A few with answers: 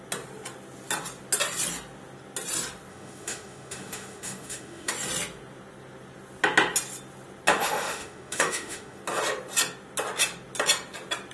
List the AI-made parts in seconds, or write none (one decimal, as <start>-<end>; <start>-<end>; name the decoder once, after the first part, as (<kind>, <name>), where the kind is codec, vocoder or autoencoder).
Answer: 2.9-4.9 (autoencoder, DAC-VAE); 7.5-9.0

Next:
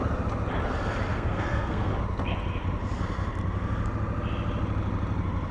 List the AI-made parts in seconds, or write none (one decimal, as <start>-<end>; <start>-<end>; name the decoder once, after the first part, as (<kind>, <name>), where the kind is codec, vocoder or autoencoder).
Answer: 1.1-1.9 (codec, SNAC)

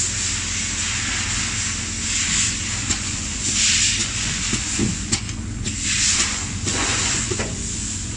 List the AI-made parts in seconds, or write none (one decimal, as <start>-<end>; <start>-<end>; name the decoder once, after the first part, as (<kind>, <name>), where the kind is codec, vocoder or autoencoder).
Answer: 2.8-3.5 (vocoder, Vocos); 4.0-8.2